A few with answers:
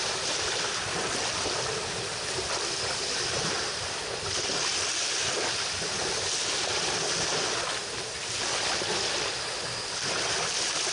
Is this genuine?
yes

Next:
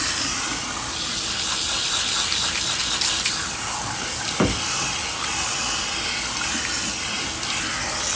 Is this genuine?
yes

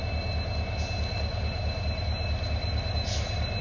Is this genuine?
yes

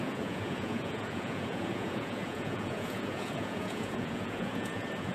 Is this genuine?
no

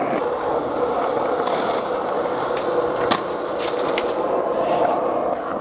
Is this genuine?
yes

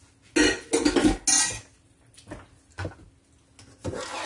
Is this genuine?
yes